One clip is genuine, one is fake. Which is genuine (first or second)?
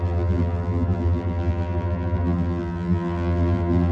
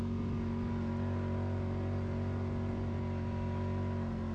second